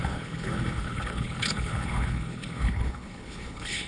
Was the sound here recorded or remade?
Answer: remade